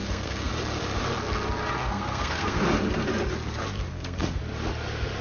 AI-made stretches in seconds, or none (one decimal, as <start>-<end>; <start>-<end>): 0.0-0.5; 1.8-2.6; 3.9-4.4

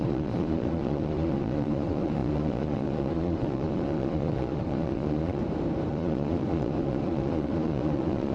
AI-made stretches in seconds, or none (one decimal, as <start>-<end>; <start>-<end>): 0.0-5.4; 5.9-8.3

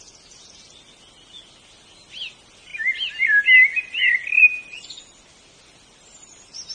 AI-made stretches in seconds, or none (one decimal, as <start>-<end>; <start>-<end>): none

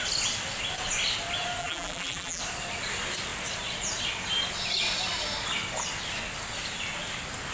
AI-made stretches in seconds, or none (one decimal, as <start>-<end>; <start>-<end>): 1.6-2.4

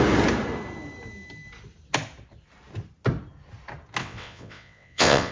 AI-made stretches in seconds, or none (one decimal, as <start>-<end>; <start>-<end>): 4.0-5.3